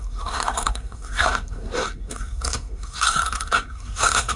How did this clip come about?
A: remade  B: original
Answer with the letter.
A